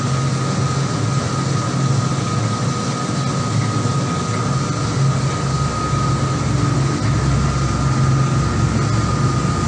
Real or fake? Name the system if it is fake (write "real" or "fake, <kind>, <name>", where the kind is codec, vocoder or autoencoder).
real